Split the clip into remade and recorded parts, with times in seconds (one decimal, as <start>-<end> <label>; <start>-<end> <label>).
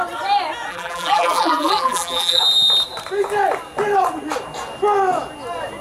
0.0-0.7 recorded; 0.7-2.4 remade; 2.4-5.8 recorded